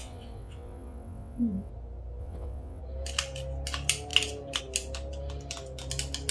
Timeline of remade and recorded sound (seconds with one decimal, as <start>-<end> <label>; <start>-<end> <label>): 0.0-1.7 remade; 1.7-2.2 recorded; 2.2-2.8 remade; 2.8-6.3 recorded